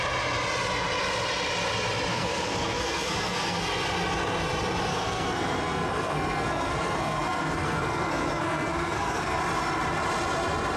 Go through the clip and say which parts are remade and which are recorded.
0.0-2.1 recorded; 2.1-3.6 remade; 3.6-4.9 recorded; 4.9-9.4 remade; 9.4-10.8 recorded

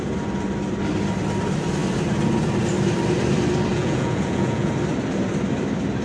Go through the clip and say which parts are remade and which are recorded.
0.0-3.7 recorded; 3.7-4.7 remade; 4.7-6.0 recorded

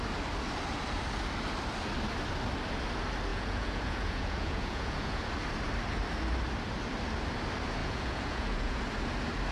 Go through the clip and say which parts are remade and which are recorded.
0.0-3.3 recorded; 3.3-5.3 remade; 5.3-7.8 recorded; 7.8-8.8 remade; 8.8-9.5 recorded

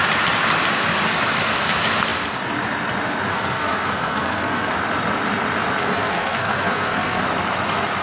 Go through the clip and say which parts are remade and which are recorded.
0.0-3.3 recorded; 3.3-4.7 remade; 4.7-5.9 recorded; 5.9-7.2 remade; 7.2-8.0 recorded